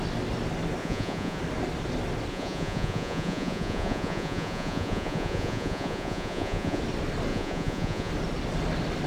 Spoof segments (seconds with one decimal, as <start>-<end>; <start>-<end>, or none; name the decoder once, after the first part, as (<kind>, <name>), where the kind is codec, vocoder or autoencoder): 0.8-1.4 (vocoder, Vocos); 2.3-6.8; 7.3-8.1